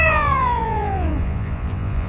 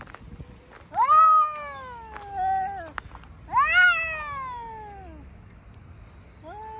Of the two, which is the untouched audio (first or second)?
second